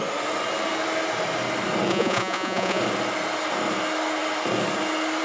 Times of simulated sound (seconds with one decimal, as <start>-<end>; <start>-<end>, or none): 1.9-2.8